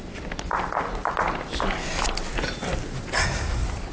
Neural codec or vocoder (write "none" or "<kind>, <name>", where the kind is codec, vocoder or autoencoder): none